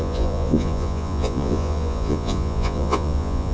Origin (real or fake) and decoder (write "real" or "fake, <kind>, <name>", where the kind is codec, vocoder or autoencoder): fake, vocoder, Vocos